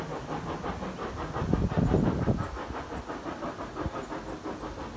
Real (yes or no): yes